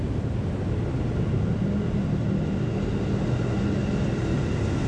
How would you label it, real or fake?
real